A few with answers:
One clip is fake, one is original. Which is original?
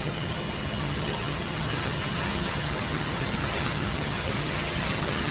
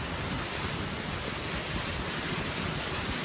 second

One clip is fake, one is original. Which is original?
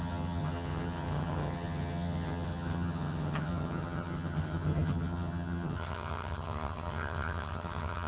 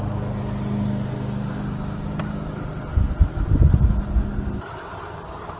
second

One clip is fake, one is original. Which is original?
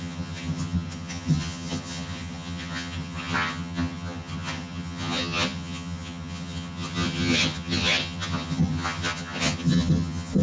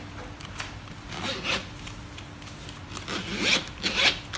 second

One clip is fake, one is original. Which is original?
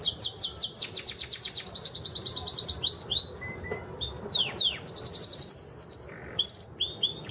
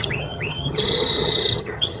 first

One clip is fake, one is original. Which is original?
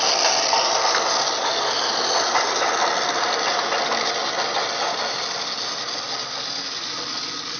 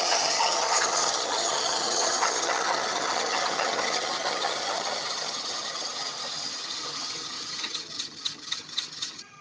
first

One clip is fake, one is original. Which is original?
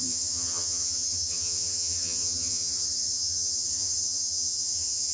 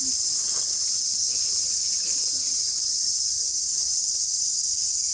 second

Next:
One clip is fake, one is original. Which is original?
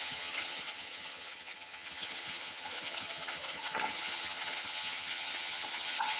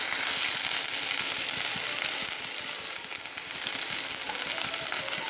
second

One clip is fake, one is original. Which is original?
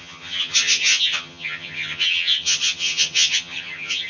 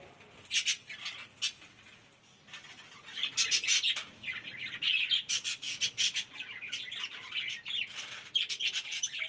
second